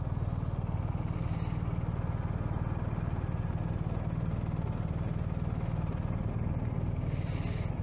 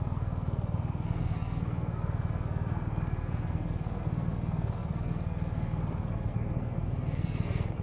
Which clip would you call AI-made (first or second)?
second